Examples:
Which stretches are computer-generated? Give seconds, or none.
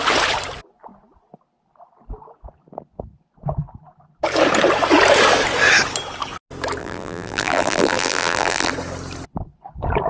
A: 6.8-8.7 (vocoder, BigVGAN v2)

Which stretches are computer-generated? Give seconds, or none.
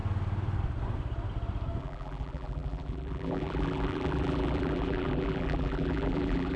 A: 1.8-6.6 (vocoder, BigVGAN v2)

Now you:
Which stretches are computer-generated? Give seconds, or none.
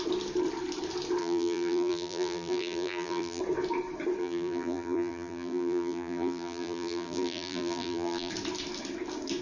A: 1.2-3.4 (vocoder, BigVGAN v2); 4.2-8.3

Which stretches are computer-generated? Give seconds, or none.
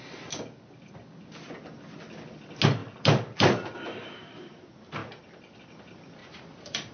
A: 2.8-4.5 (vocoder, BigVGAN v2); 6.2-6.9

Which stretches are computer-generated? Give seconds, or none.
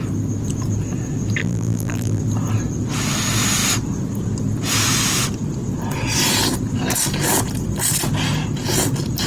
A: 1.4-2.2 (vocoder, BigVGAN v2)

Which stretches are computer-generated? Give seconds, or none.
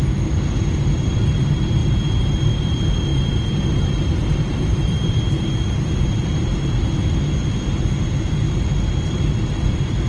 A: 3.1-6.8 (vocoder, BigVGAN v2)